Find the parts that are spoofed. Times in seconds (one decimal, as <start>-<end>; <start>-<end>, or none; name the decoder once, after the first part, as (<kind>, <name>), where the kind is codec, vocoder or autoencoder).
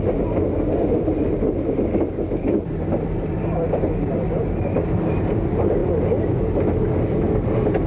none